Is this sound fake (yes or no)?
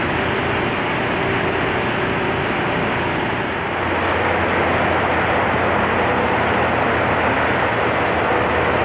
no